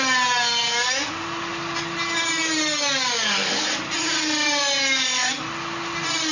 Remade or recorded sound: recorded